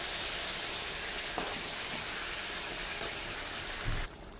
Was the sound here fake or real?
fake